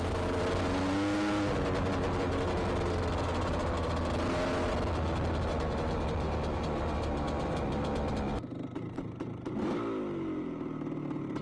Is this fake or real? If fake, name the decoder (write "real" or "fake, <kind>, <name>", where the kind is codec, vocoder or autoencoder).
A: real